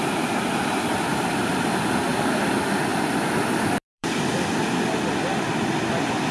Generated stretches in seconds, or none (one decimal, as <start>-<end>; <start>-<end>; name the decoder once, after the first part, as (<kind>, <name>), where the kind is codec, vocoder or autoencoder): 1.1-1.8 (vocoder, BigVGAN v2); 2.9-4.6